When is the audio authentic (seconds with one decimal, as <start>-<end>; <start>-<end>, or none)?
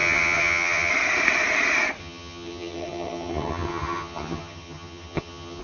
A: 0.9-2.0